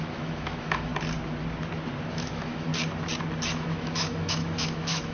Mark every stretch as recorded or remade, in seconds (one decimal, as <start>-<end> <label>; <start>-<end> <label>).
0.0-0.9 remade; 0.9-2.1 recorded; 2.1-2.7 remade; 2.7-3.5 recorded; 3.5-5.1 remade